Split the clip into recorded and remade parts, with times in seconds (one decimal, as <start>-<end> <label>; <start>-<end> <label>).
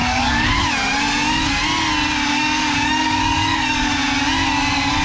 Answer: 0.0-0.5 remade; 0.5-2.3 recorded; 2.3-3.9 remade; 3.9-5.0 recorded